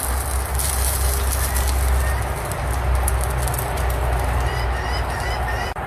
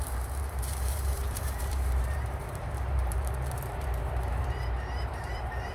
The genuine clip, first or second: first